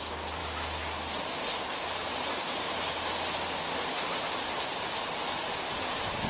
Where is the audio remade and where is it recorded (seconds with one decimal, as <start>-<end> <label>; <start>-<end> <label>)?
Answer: 0.0-6.3 remade